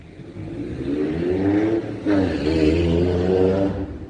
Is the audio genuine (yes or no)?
yes